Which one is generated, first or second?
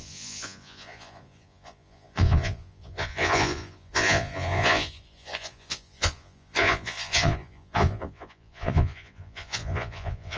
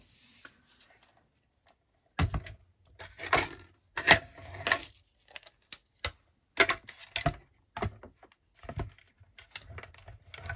first